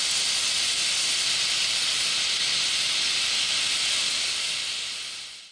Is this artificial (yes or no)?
no